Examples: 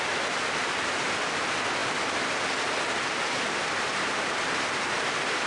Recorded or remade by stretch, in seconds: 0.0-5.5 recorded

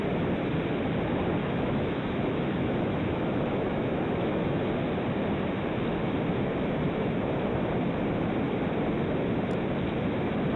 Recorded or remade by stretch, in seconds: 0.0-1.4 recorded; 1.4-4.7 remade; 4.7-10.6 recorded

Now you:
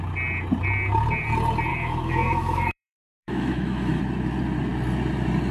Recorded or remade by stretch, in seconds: 0.0-1.7 recorded; 1.7-4.0 remade; 4.0-5.5 recorded